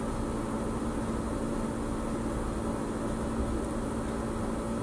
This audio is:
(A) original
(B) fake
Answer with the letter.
A